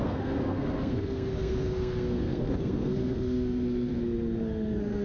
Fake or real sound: fake